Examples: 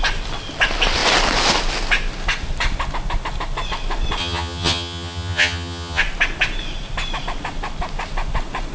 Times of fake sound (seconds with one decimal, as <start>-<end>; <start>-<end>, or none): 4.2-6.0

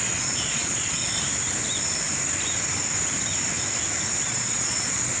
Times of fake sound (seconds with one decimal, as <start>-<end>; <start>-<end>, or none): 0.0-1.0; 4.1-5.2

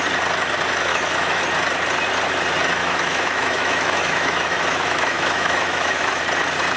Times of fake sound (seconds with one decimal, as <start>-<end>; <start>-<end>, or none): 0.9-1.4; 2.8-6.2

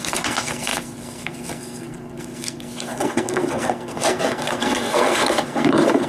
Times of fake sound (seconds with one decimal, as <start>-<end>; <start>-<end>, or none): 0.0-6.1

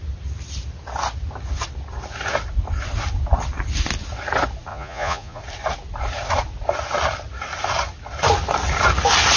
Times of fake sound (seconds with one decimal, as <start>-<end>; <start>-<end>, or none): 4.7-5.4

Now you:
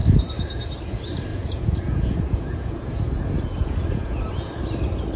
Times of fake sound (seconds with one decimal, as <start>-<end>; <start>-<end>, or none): 1.3-4.2

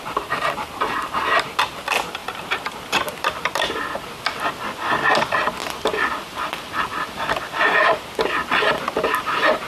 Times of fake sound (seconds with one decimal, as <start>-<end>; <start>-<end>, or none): 2.2-4.4; 5.6-8.0; 8.4-9.7